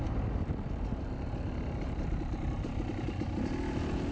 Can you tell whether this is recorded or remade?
recorded